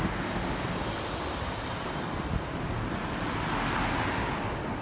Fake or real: real